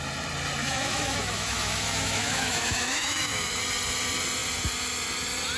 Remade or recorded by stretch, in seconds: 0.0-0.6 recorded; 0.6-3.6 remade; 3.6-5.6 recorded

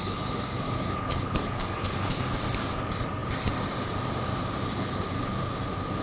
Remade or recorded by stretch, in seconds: 0.0-2.2 remade; 2.2-4.7 recorded; 4.7-5.4 remade; 5.4-6.0 recorded

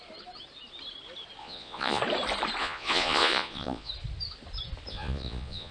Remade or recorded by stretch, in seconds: 0.0-1.4 recorded; 1.4-2.0 remade; 2.0-2.6 recorded; 2.6-3.9 remade; 3.9-4.9 recorded; 4.9-5.7 remade

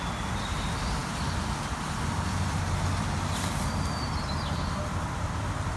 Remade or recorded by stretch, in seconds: 0.0-5.8 recorded